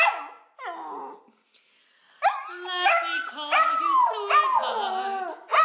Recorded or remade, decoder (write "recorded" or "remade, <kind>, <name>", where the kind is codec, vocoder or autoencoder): recorded